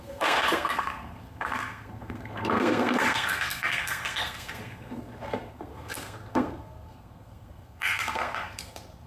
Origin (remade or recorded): remade